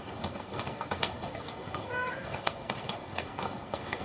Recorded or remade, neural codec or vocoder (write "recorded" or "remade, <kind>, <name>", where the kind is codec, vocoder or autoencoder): remade, codec, SNAC